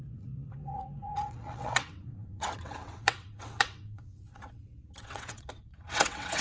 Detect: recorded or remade remade